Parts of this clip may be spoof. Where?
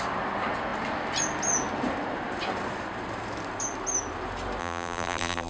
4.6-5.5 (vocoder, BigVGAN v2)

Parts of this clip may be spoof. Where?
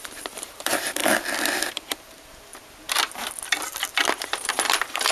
0.0-1.0 (vocoder, BigVGAN v2); 1.7-2.5; 4.2-5.1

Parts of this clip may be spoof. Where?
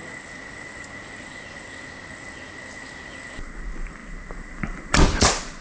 none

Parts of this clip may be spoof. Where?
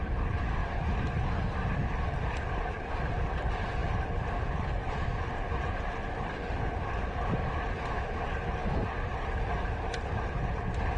0.0-3.8 (vocoder, BigVGAN v2); 6.3-8.6; 9.1-11.0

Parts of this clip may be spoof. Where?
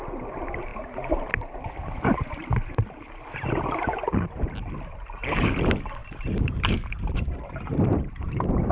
6.0-8.1 (vocoder, BigVGAN v2)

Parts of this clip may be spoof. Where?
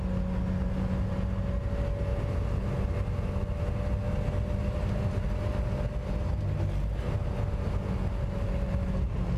none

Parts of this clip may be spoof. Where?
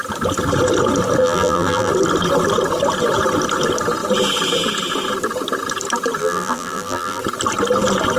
1.2-1.9 (vocoder, BigVGAN v2); 6.2-7.2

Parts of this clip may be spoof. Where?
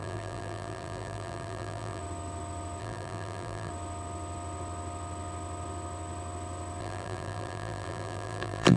0.0-2.0 (vocoder, BigVGAN v2); 2.8-3.7; 6.8-8.8